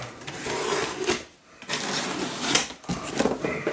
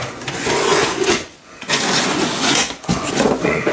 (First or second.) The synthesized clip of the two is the second